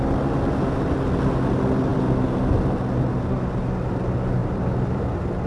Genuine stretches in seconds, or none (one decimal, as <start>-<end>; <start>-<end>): 0.0-4.4; 5.0-5.5